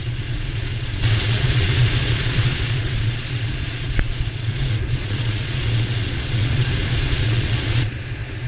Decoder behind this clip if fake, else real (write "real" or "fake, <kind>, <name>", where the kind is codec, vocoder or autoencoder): fake, vocoder, Vocos